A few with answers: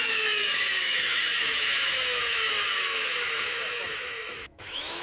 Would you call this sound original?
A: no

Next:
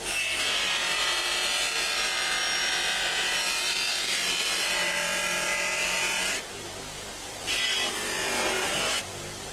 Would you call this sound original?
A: no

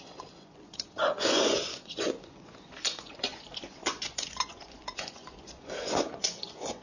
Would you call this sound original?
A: no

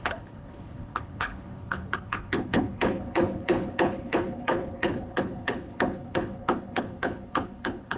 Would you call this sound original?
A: no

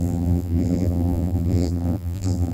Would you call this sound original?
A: no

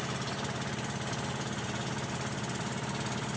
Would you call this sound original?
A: yes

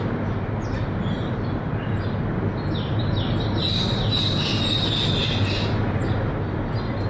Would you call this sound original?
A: yes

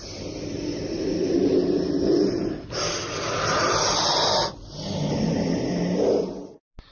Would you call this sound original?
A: yes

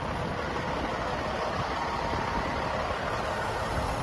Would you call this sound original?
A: yes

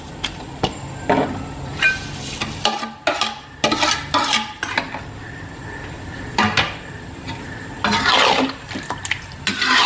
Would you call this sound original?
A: yes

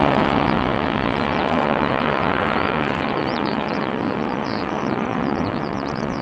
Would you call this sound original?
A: no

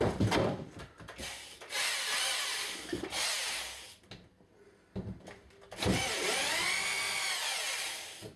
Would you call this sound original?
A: yes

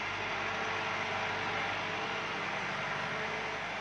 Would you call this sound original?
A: yes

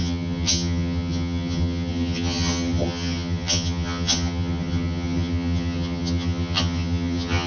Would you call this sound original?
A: no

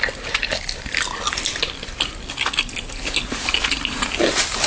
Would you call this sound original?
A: yes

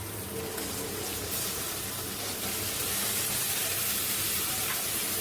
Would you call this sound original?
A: no